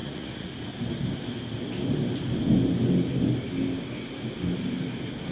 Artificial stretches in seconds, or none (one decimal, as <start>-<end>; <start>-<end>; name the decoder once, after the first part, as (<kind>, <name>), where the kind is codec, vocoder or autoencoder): 0.0-0.5 (vocoder, Vocos)